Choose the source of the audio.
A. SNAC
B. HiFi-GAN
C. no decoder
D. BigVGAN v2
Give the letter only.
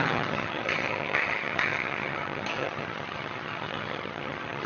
B